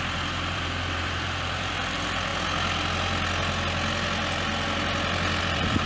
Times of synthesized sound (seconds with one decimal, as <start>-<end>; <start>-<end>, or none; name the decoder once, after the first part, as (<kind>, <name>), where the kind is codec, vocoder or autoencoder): 0.0-2.3 (vocoder, BigVGAN v2); 5.4-5.9

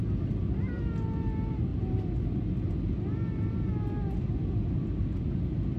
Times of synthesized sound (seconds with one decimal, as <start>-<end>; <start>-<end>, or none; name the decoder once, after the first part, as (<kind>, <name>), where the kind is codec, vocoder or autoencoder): none

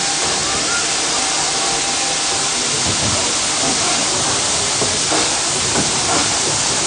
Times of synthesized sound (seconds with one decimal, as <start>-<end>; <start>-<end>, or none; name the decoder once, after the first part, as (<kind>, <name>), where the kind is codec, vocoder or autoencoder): none

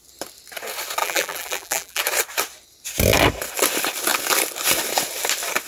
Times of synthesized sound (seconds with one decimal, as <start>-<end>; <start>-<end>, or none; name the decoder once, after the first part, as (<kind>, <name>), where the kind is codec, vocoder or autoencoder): 1.0-2.0 (vocoder, BigVGAN v2)

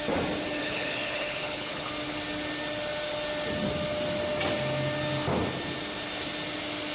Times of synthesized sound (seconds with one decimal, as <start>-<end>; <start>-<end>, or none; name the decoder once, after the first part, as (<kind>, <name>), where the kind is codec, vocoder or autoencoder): 0.6-1.9 (codec, HILCodec)

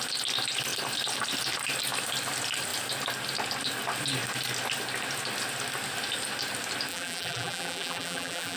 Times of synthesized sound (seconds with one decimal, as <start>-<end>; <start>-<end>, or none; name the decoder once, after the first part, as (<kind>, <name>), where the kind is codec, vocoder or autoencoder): 6.9-8.6 (vocoder, BigVGAN v2)